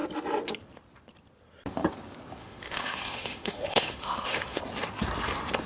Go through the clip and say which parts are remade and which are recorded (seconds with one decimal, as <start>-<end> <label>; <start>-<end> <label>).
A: 0.0-2.4 recorded; 2.4-4.6 remade; 4.6-5.7 recorded